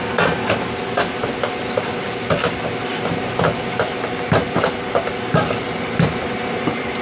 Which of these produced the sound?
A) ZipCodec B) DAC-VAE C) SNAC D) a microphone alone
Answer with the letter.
D